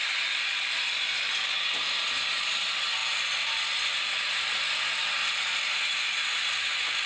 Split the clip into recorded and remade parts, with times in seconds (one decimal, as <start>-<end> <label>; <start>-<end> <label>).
0.0-7.1 recorded